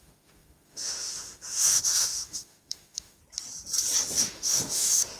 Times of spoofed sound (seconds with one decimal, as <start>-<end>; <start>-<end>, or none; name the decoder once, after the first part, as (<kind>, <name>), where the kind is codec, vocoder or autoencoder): 0.0-3.2 (autoencoder, DAC-VAE); 4.2-5.2